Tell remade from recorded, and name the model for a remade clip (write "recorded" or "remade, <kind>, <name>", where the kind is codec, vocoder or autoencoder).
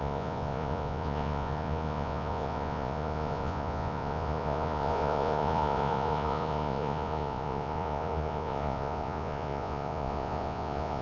remade, vocoder, Vocos